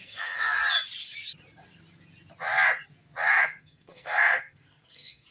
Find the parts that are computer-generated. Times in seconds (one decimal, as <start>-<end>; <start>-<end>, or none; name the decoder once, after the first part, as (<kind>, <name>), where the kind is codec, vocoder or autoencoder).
0.0-0.6 (codec, SNAC); 3.3-5.3